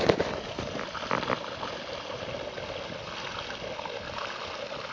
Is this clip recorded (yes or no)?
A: yes